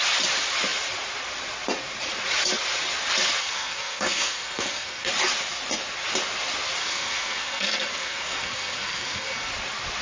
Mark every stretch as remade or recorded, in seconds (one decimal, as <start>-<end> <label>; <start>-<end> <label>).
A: 0.0-3.4 recorded; 3.4-5.1 remade; 5.1-6.8 recorded; 6.8-9.5 remade; 9.5-10.0 recorded